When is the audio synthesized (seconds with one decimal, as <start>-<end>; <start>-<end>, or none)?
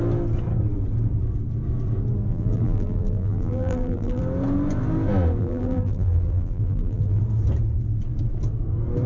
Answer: 2.3-4.2; 5.4-7.2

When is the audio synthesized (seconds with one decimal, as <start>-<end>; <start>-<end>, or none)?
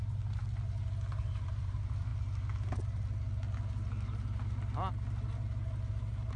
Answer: 0.0-0.4; 1.2-2.1; 5.9-6.4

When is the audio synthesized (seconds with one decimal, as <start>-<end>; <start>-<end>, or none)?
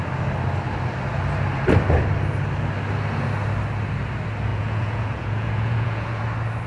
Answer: 4.5-6.2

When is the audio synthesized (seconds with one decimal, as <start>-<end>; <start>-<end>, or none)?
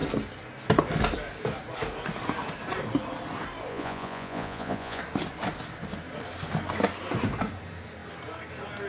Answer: 3.7-5.0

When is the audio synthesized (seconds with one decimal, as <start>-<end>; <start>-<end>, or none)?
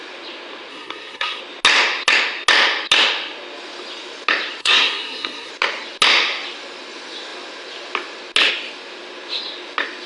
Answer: 0.7-1.4; 4.6-5.5